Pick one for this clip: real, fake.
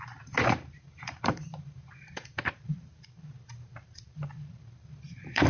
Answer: fake